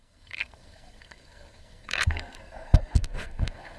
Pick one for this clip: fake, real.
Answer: fake